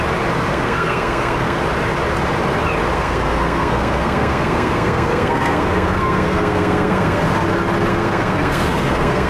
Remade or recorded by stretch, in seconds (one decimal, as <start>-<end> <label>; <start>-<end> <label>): 0.0-0.5 recorded; 0.5-1.6 remade; 1.6-2.9 recorded; 2.9-7.2 remade; 7.2-7.9 recorded; 7.9-9.3 remade